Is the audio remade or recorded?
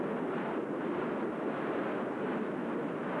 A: recorded